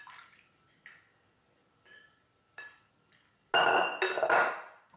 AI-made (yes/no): no